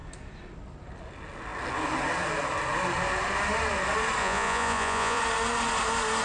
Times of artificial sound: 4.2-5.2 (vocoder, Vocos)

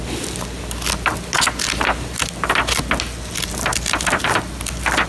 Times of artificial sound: none

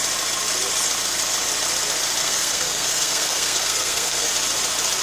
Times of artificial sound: 2.2-4.3 (codec, SNAC)

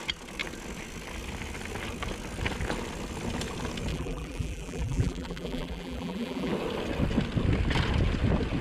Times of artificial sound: 3.9-6.5 (vocoder, BigVGAN v2)

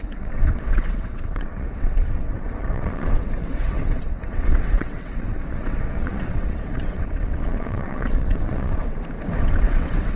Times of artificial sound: 0.0-8.8 (vocoder, WaveNeXt); 9.4-10.2

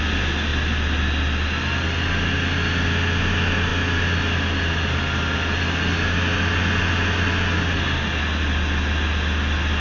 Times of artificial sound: none

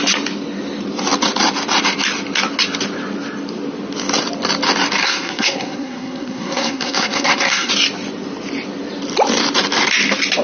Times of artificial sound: 5.0-7.7 (codec, SNAC)

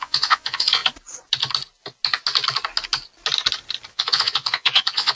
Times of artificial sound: 0.0-0.8 (vocoder, Vocos); 3.9-5.1